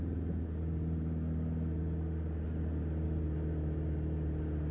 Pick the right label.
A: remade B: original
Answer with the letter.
B